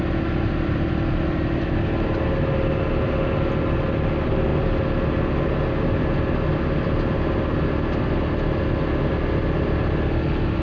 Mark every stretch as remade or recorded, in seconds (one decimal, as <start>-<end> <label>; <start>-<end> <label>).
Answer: 0.0-10.6 recorded